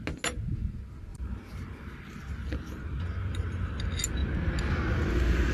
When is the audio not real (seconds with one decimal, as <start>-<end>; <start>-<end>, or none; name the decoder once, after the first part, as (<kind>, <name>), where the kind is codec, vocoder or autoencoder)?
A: 1.1-1.8 (vocoder, BigVGAN v2); 3.2-3.7